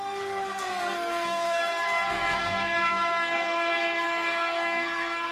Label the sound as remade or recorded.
remade